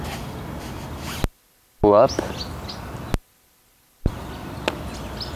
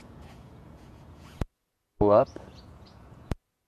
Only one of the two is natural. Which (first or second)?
first